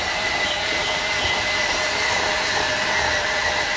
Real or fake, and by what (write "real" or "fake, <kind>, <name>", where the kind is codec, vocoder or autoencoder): fake, vocoder, BigVGAN v2